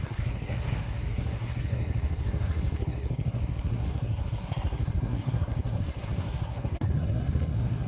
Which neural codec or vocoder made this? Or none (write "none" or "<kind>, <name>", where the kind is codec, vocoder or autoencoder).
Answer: codec, SNAC